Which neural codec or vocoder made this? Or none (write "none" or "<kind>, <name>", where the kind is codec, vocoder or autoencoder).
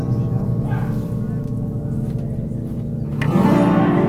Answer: none